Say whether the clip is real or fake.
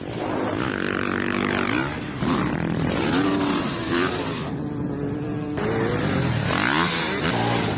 real